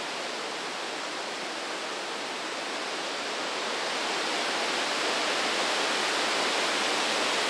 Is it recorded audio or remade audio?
recorded